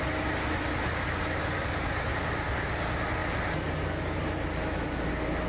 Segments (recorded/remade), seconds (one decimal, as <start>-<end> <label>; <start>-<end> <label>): 0.0-5.5 recorded